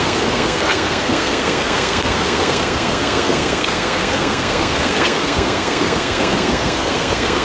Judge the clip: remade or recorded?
remade